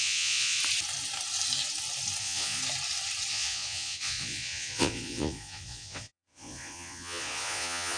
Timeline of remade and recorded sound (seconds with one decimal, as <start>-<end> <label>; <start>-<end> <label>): 0.0-0.6 remade; 0.6-2.2 recorded; 2.2-2.6 remade; 2.6-3.3 recorded; 3.3-8.0 remade